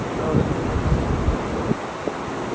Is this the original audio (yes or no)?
yes